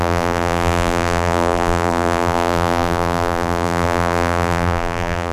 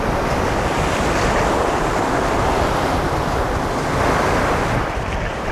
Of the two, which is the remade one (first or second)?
first